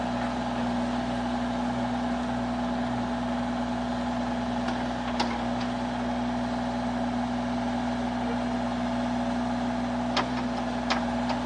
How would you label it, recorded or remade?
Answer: recorded